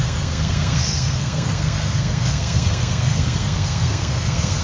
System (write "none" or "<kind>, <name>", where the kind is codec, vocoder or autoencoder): codec, SNAC